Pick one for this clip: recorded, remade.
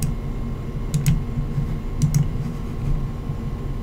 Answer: recorded